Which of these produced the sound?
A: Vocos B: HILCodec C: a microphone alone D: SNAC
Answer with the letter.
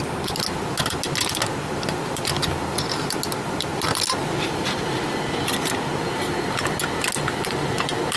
C